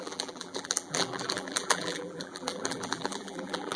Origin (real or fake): fake